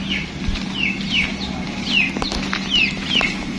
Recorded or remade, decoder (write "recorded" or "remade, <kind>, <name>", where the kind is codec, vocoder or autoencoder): recorded